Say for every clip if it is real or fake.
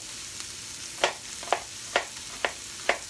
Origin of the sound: real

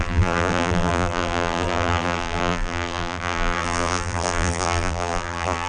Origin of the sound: fake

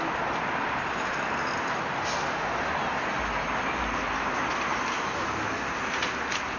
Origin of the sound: real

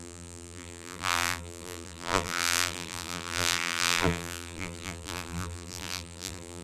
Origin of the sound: fake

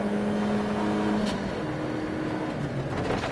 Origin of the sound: real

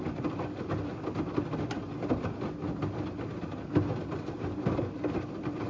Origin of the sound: real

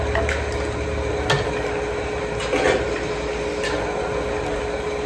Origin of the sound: real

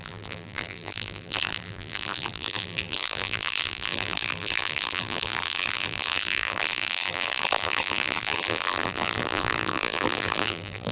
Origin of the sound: fake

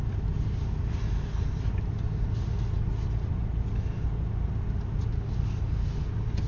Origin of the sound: real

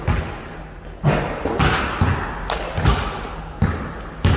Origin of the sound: real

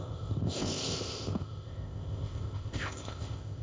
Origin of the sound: fake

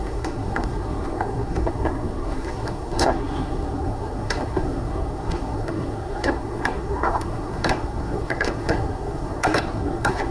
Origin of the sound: fake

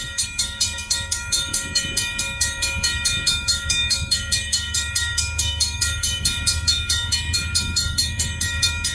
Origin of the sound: fake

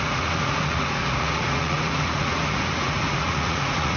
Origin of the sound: fake